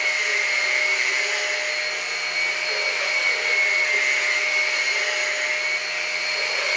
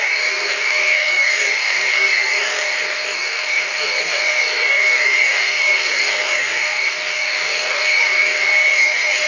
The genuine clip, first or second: first